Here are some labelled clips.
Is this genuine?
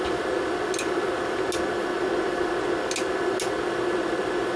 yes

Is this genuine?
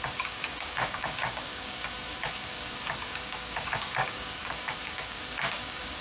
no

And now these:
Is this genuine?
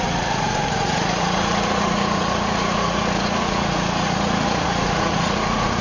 no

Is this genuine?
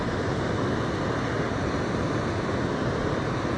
yes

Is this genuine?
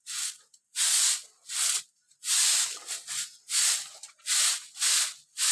yes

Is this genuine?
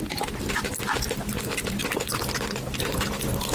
yes